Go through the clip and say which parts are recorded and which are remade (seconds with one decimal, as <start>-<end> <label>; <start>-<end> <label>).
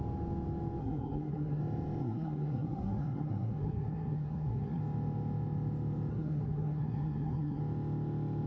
0.0-0.8 recorded; 0.8-1.6 remade; 1.6-2.0 recorded; 2.0-4.8 remade; 4.8-6.1 recorded; 6.1-7.6 remade; 7.6-8.5 recorded